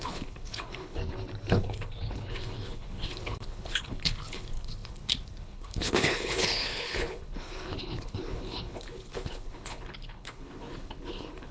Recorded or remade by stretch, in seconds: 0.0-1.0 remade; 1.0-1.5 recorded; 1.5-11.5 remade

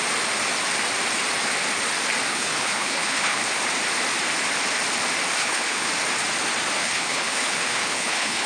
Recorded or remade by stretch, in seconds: 0.0-2.3 recorded; 2.3-3.4 remade; 3.4-5.4 recorded; 5.4-5.9 remade; 5.9-6.8 recorded; 6.8-8.5 remade

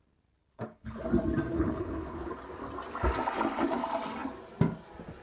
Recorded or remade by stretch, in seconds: 0.0-0.4 recorded; 0.4-1.0 remade; 1.0-1.5 recorded; 1.5-2.4 remade; 2.4-5.2 recorded